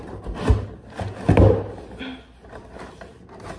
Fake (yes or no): no